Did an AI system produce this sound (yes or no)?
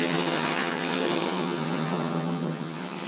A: yes